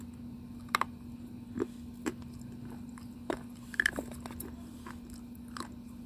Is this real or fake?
real